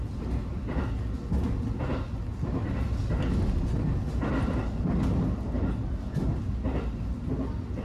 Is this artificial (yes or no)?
no